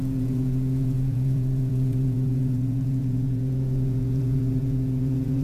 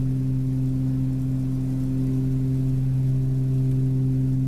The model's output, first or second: first